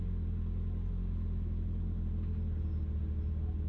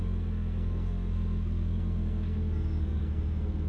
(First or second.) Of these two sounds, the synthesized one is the second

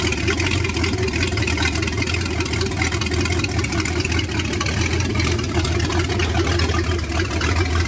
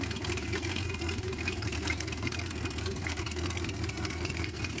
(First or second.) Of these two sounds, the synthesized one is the second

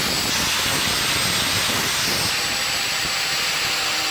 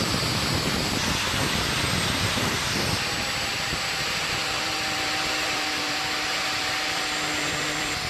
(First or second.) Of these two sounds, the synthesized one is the second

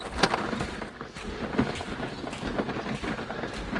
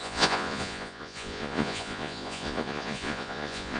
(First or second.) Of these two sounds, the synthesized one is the second